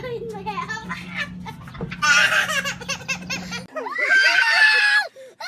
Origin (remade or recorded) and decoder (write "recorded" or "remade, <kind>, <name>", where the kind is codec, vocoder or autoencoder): recorded